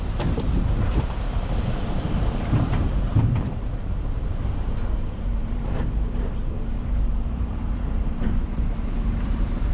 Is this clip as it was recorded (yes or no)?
no